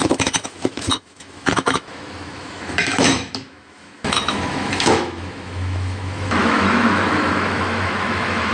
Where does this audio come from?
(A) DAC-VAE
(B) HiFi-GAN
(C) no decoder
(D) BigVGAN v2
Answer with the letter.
A